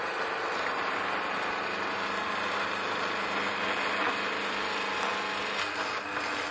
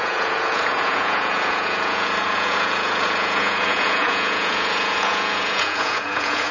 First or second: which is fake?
second